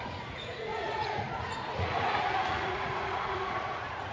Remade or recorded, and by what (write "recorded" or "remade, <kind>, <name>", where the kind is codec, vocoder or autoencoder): remade, vocoder, Vocos